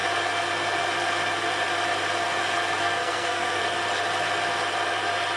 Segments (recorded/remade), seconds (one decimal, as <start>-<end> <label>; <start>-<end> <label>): 0.0-2.8 recorded; 2.8-3.6 remade; 3.6-5.4 recorded